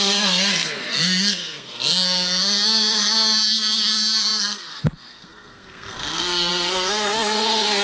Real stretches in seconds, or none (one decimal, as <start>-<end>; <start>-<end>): none